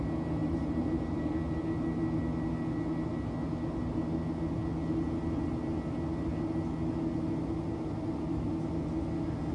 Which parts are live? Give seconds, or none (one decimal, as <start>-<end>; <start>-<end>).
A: 0.0-0.4; 1.2-9.5